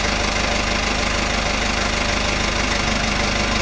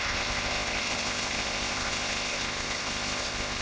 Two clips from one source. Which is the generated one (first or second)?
second